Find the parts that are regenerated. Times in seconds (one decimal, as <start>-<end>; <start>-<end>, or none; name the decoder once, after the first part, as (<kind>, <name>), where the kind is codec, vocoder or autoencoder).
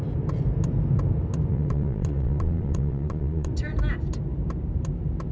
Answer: 1.5-3.5 (vocoder, Vocos)